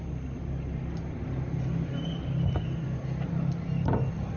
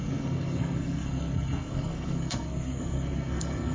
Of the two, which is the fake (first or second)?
second